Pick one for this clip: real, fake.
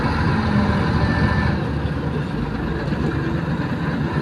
real